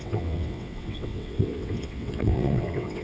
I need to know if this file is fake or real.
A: fake